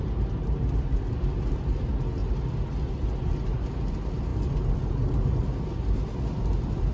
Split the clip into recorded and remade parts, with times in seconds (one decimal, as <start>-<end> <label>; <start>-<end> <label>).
0.0-6.9 recorded